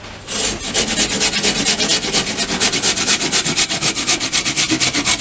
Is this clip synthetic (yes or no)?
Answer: no